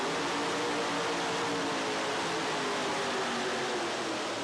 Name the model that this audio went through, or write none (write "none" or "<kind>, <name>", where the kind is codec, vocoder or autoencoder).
none